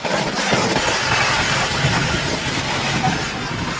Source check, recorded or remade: recorded